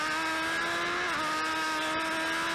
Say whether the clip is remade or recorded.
recorded